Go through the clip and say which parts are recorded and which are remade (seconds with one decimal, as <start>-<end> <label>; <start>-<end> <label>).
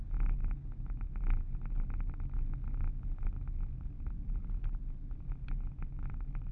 0.0-0.4 recorded; 0.4-1.1 remade; 1.1-6.5 recorded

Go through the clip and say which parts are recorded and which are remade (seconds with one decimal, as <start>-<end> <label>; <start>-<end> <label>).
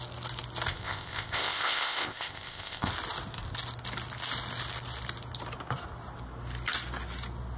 0.0-0.7 recorded; 0.7-2.9 remade; 2.9-7.6 recorded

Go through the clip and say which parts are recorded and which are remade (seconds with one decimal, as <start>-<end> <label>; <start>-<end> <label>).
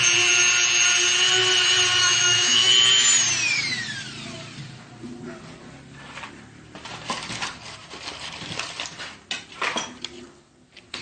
0.0-2.0 recorded; 2.0-2.7 remade; 2.7-11.0 recorded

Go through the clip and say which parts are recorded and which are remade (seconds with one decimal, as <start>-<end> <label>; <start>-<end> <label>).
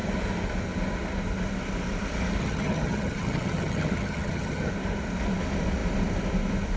0.0-2.4 recorded; 2.4-4.7 remade; 4.7-6.8 recorded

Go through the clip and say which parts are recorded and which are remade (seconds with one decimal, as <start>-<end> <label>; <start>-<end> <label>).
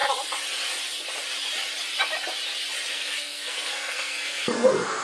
0.0-2.9 recorded; 2.9-5.0 remade